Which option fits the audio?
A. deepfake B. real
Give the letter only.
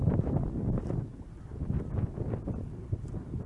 B